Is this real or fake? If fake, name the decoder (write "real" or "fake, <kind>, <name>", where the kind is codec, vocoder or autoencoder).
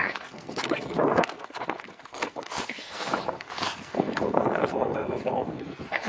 fake, codec, SNAC